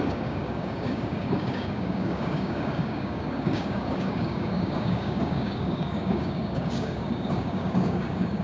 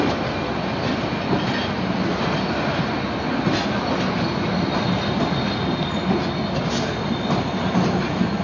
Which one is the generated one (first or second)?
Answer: first